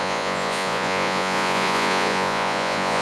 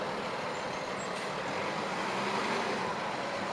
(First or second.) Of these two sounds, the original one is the second